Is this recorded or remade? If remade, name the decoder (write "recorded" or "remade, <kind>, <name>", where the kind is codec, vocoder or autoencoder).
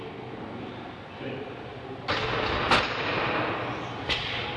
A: recorded